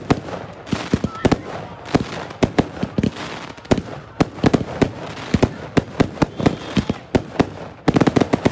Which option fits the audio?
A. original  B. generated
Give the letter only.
A